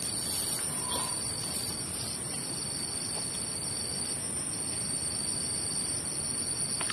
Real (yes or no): yes